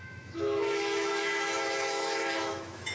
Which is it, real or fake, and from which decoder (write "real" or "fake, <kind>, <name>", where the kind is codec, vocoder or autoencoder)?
fake, autoencoder, DAC-VAE